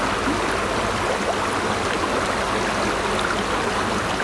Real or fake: real